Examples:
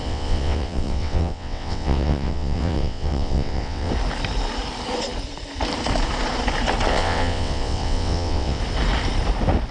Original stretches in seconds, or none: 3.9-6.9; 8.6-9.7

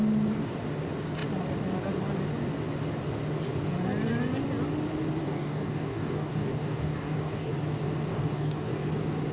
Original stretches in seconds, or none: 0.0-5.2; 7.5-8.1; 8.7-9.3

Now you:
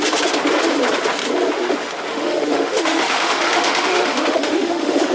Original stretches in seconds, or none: 0.0-2.1

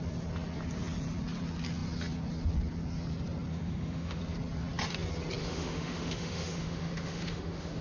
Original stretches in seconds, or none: 0.0-3.5; 4.2-5.4

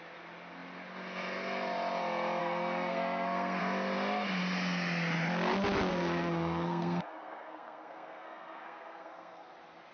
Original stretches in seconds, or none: 0.0-2.4; 3.6-5.9; 9.5-9.9

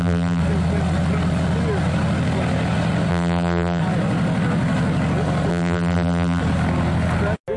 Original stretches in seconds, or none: 0.4-3.1; 3.8-5.5; 6.4-7.6

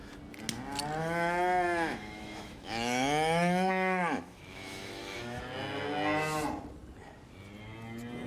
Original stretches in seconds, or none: 0.0-1.0; 5.4-8.3